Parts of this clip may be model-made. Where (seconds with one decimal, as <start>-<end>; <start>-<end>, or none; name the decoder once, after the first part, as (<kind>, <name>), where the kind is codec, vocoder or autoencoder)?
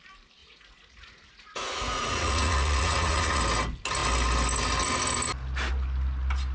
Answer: 0.4-3.4 (vocoder, Vocos)